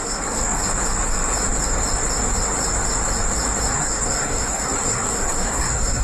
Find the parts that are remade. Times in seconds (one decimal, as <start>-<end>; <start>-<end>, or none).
0.0-0.6; 3.7-6.0